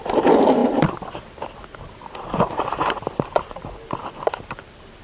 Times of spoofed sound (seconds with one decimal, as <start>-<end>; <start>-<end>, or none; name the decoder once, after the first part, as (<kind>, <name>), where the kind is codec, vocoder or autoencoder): none